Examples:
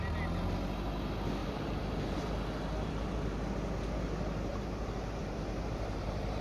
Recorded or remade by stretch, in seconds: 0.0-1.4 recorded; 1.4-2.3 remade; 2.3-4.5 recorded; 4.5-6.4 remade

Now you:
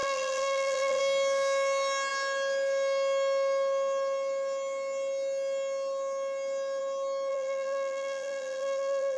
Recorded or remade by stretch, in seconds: 0.0-1.0 remade; 1.0-7.3 recorded; 7.3-9.2 remade

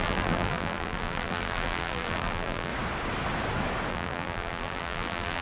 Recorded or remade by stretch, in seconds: 0.0-2.7 remade; 2.7-3.9 recorded; 3.9-5.4 remade

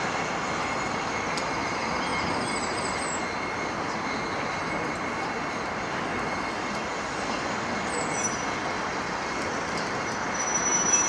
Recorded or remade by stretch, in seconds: 0.0-11.1 recorded

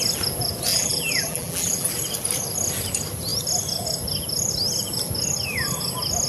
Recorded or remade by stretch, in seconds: 0.0-0.7 recorded; 0.7-1.9 remade; 1.9-6.3 recorded